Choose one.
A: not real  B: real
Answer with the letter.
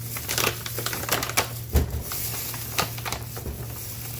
B